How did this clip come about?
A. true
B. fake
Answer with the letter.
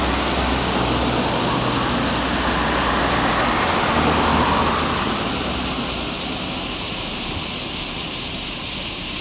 A